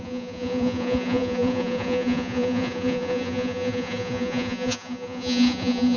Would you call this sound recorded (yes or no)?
no